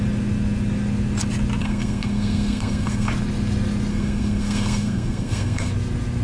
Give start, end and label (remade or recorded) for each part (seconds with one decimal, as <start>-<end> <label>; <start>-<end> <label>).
0.0-1.6 recorded; 1.6-3.1 remade; 3.1-3.9 recorded; 3.9-5.7 remade; 5.7-6.2 recorded